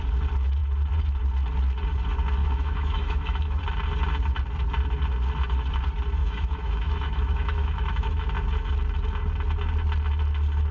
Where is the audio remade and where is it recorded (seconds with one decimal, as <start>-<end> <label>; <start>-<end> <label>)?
0.0-2.4 recorded; 2.4-3.6 remade; 3.6-6.2 recorded; 6.2-8.3 remade; 8.3-10.7 recorded